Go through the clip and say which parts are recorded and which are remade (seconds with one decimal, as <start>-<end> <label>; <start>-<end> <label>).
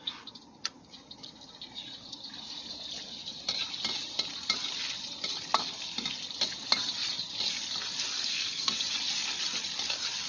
0.0-8.3 recorded; 8.3-8.8 remade; 8.8-10.3 recorded